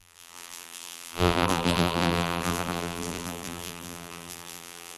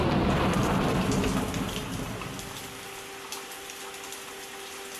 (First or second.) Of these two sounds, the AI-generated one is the first